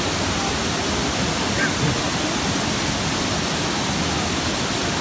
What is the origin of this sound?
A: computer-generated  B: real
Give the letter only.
B